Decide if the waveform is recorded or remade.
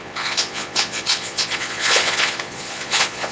remade